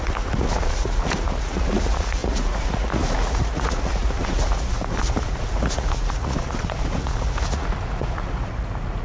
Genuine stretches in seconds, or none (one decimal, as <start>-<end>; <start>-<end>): none